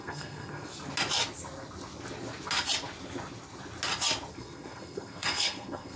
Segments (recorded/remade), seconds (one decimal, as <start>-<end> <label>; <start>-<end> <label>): 0.0-0.7 remade; 0.7-4.3 recorded; 4.3-6.0 remade